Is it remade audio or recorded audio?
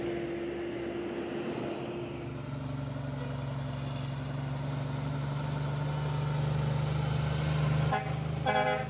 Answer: recorded